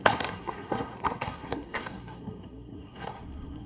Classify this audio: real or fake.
fake